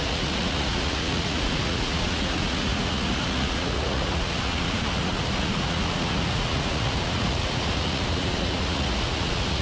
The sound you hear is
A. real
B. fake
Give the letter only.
B